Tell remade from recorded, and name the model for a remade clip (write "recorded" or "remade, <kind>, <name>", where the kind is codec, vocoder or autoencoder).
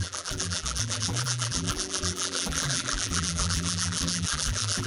remade, vocoder, BigVGAN v2